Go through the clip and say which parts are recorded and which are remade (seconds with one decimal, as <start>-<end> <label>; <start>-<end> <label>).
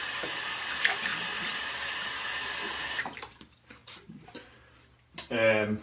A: 0.0-3.8 recorded; 3.8-4.3 remade; 4.3-5.8 recorded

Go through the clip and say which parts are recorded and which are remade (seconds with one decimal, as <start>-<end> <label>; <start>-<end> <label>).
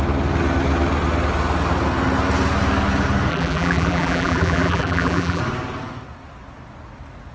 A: 0.0-3.3 recorded; 3.3-5.4 remade; 5.4-7.3 recorded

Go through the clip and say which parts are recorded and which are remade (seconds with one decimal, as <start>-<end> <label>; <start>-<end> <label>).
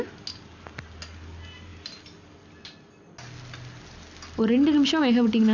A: 0.0-5.5 recorded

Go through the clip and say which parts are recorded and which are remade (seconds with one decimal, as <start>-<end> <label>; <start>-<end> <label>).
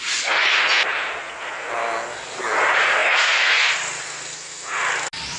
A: 0.0-5.4 recorded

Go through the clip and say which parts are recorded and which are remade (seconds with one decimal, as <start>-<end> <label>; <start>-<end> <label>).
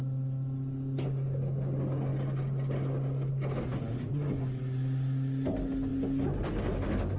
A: 0.0-7.2 recorded